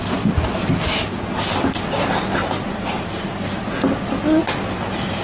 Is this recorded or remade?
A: recorded